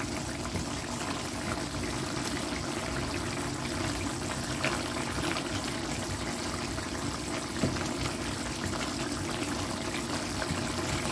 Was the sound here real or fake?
real